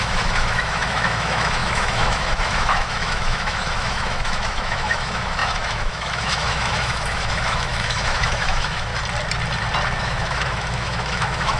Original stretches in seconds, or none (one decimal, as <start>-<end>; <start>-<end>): 8.9-10.0